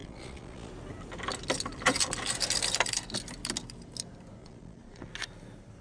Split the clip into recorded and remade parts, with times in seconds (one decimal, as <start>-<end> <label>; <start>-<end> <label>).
0.0-0.7 remade; 0.7-4.4 recorded; 4.4-5.1 remade; 5.1-5.8 recorded